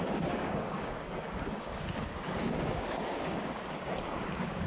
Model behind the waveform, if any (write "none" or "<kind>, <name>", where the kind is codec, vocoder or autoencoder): codec, DAC